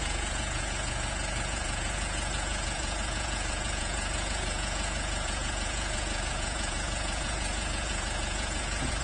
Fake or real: fake